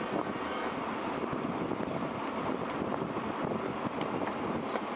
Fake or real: real